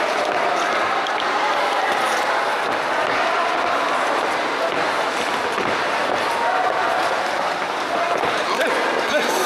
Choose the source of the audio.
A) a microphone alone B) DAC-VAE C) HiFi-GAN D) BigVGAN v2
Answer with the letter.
A